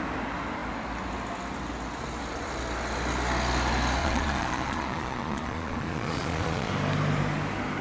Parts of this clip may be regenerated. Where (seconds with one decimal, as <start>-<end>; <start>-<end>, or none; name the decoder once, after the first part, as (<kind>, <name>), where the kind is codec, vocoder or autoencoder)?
4.0-6.7 (vocoder, Vocos)